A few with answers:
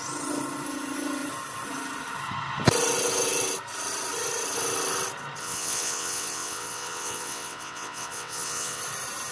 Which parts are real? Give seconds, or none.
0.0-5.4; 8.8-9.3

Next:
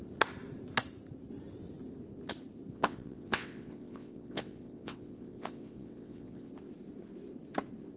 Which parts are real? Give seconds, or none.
0.0-2.7; 6.5-8.0

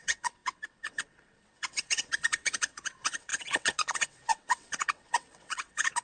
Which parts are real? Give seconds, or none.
none

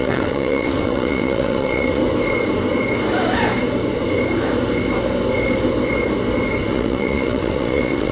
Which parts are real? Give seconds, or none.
2.0-6.6

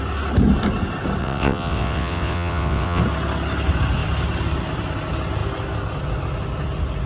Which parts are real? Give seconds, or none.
0.0-1.2; 3.0-7.1

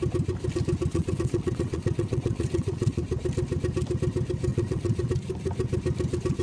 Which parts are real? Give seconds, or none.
0.0-0.9; 3.0-4.5; 5.1-6.4

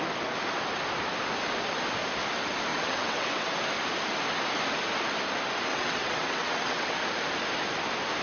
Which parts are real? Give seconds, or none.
0.0-2.7; 3.6-5.7; 7.0-8.2